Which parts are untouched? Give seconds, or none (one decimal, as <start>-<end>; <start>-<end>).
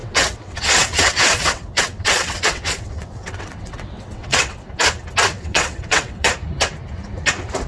4.6-5.3; 6.3-7.7